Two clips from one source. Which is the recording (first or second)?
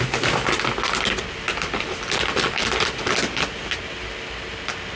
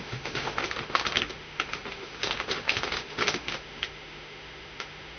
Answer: first